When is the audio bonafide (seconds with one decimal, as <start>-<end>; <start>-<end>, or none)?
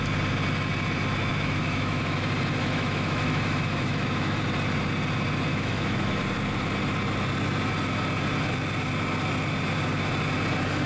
0.0-1.2; 2.2-2.6; 4.4-5.5; 6.2-10.9